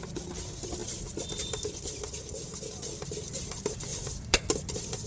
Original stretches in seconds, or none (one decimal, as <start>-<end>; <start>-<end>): 0.0-3.9; 4.5-5.1